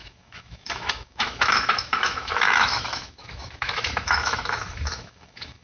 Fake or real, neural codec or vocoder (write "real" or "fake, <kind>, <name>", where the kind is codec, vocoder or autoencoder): fake, autoencoder, DAC-VAE